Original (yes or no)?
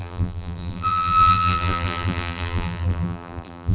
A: no